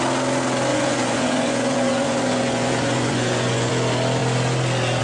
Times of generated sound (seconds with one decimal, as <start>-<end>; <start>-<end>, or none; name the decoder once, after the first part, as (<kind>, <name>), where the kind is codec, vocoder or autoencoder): 0.7-3.7 (vocoder, Vocos)